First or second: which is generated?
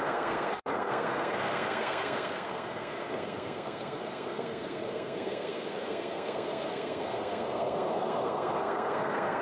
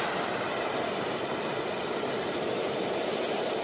first